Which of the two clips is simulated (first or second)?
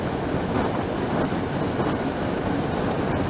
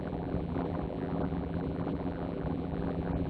second